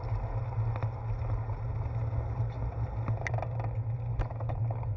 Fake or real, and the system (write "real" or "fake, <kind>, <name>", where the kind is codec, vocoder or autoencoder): real